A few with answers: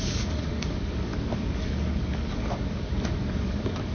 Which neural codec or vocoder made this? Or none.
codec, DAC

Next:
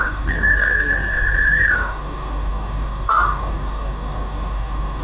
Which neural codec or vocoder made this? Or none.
codec, DAC